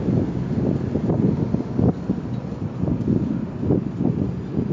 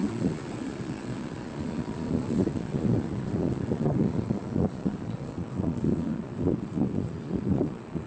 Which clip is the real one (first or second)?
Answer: first